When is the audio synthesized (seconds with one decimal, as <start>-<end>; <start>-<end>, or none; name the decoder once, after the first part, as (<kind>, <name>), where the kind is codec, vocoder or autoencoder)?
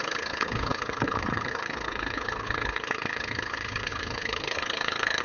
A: 0.0-5.2 (codec, HILCodec)